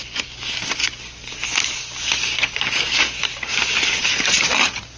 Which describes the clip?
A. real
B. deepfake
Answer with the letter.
B